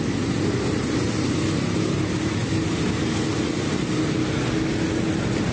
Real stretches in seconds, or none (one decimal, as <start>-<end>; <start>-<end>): 0.0-5.5